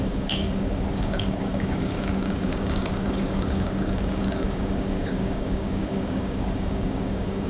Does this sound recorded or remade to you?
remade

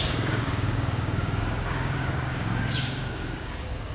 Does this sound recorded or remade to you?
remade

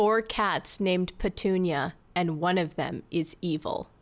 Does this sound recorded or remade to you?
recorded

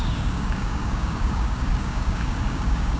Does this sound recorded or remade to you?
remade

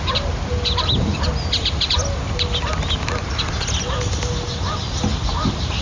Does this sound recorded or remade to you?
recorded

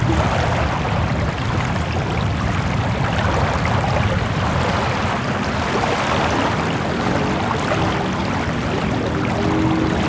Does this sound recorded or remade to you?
recorded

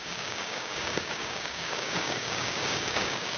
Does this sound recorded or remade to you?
remade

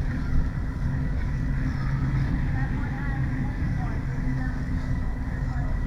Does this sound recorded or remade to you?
remade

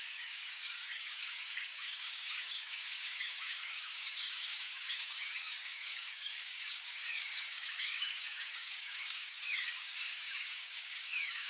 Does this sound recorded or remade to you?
remade